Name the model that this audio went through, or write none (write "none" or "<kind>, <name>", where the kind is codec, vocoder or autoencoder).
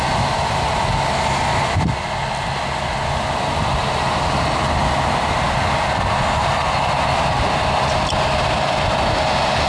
none